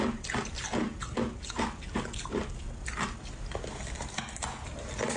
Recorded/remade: recorded